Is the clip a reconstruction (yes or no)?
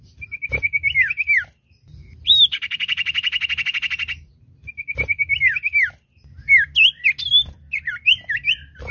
no